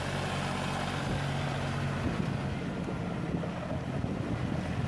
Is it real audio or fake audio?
real